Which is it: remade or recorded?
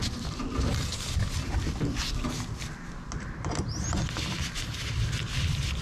recorded